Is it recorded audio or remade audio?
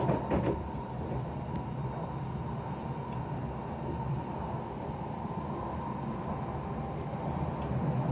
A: recorded